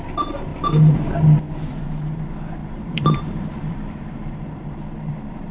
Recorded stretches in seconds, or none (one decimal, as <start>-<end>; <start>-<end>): 0.0-0.5; 1.1-1.7; 2.2-2.6; 5.1-5.5